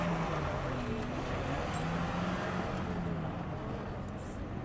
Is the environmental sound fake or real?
real